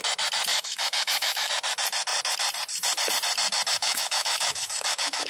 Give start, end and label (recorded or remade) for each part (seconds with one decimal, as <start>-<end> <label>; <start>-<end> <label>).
0.0-0.5 recorded; 0.5-1.5 remade; 1.5-3.8 recorded; 3.8-5.3 remade